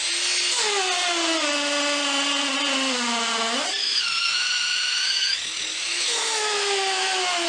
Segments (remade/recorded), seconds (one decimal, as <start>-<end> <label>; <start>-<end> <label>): 0.0-3.8 recorded; 3.8-7.5 remade